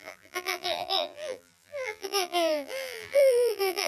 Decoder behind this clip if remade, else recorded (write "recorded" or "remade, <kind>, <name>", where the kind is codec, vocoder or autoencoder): remade, vocoder, BigVGAN v2